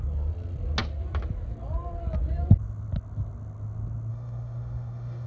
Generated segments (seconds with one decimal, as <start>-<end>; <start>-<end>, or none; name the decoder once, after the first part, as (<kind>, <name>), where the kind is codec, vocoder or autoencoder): 4.1-5.3 (autoencoder, DAC-VAE)